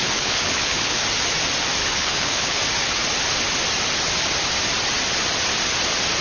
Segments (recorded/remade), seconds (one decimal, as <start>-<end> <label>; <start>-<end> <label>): 0.0-1.0 remade; 1.0-1.8 recorded; 1.8-2.6 remade; 2.6-6.2 recorded